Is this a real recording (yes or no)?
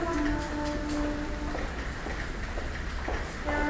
yes